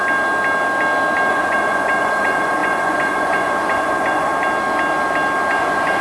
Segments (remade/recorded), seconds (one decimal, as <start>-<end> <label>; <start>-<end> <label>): 0.0-1.3 recorded; 1.3-4.3 remade; 4.3-5.5 recorded; 5.5-6.0 remade